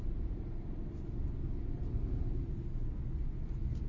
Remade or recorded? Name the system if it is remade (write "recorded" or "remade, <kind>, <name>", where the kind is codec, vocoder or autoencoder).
recorded